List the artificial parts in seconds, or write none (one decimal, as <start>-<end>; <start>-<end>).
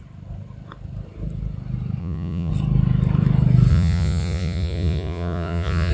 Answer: 2.0-2.5; 3.7-5.9